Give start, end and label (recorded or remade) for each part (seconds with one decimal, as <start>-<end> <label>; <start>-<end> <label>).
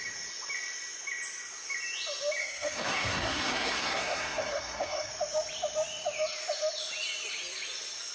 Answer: 0.0-2.4 recorded; 2.4-5.1 remade; 5.1-8.1 recorded